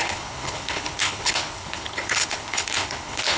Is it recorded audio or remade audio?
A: remade